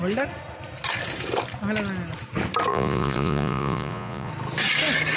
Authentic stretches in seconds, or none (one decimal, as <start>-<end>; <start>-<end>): 0.0-2.7; 4.3-5.2